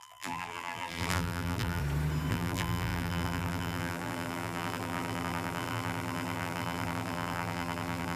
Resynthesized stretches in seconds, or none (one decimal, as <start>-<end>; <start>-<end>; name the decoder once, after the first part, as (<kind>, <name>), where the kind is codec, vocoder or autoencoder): 0.0-1.8 (vocoder, BigVGAN v2); 2.3-8.2